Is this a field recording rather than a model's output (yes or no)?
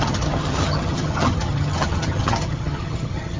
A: no